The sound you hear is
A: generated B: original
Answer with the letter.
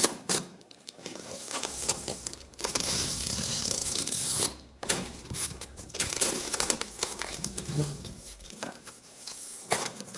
A